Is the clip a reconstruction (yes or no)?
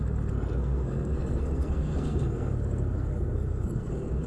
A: yes